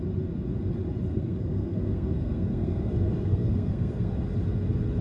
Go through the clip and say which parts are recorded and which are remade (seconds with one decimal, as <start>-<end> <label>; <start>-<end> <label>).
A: 0.0-1.1 recorded; 1.1-4.1 remade; 4.1-5.0 recorded